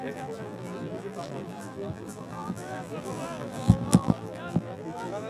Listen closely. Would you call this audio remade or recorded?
remade